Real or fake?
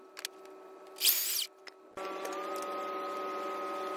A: real